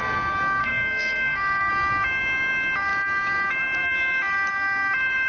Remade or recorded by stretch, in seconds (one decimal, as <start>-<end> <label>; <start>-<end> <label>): 0.0-0.6 recorded; 0.6-1.7 remade; 1.7-5.3 recorded